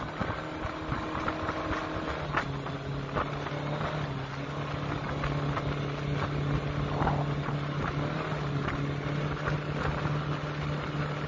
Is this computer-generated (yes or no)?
no